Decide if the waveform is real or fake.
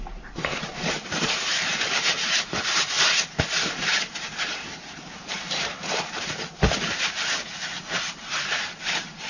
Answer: fake